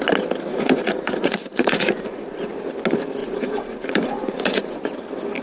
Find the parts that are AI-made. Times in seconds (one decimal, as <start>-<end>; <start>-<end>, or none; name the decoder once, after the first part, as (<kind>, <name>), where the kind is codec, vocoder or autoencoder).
0.5-2.5 (vocoder, Vocos); 3.2-4.8